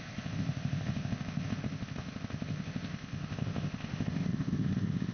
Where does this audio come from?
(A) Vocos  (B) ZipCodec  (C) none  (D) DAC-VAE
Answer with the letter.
B